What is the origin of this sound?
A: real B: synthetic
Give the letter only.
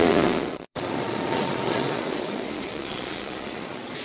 B